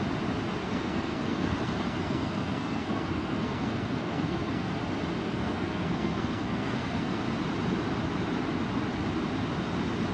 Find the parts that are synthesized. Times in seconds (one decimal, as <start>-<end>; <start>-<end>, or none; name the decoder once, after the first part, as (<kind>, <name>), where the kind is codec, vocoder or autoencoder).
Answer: 0.6-4.8 (codec, SNAC); 5.2-7.2